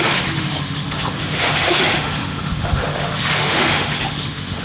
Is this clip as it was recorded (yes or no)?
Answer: no